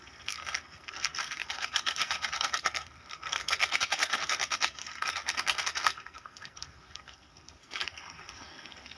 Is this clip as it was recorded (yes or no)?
no